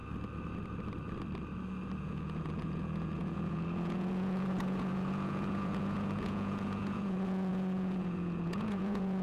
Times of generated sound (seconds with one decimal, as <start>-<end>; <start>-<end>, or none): 2.0-9.2